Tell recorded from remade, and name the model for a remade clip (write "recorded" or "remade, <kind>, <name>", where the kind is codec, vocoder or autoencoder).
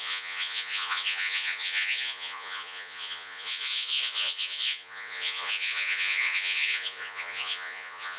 remade, vocoder, Vocos